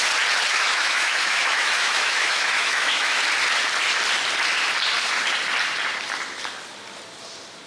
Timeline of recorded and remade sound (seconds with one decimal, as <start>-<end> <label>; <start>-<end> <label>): 0.0-0.5 recorded; 0.5-3.2 remade; 3.2-7.7 recorded